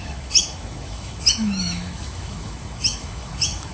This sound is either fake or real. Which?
fake